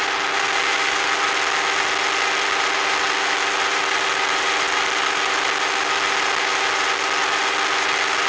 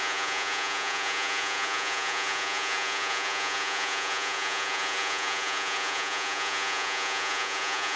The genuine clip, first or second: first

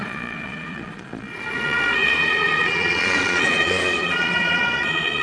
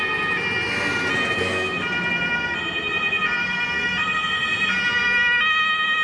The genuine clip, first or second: second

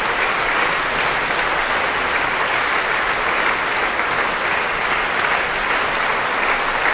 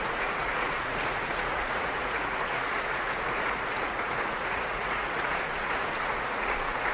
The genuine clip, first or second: first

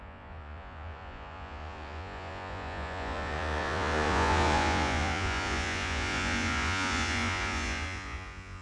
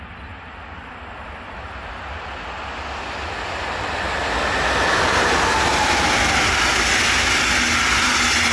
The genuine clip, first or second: second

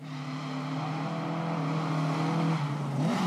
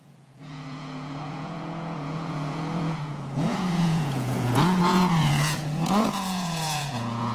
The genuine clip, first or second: first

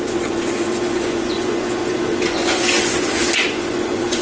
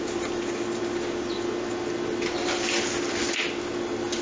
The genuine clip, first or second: second